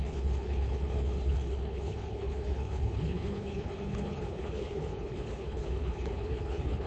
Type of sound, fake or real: fake